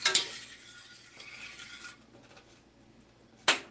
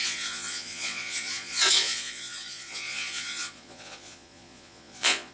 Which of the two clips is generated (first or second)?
second